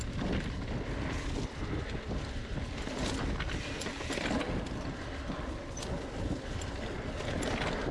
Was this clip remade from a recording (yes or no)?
no